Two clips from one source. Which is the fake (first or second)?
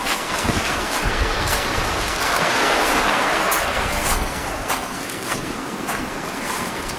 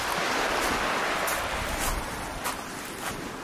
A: first